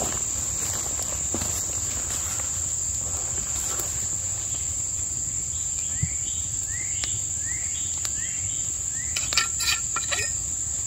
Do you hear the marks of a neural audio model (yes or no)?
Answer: no